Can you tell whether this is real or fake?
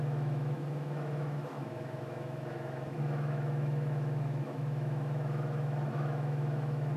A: fake